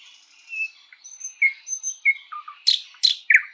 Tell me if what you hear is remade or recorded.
recorded